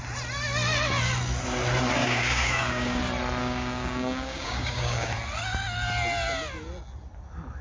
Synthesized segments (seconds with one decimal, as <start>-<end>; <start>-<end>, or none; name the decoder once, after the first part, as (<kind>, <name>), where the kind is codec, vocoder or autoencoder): 2.0-3.0 (codec, DAC); 3.4-5.1